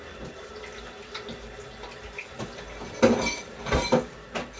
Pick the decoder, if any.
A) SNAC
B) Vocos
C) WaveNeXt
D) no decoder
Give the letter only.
D